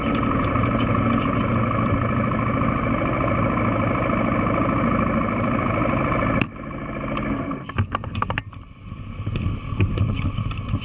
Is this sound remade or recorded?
recorded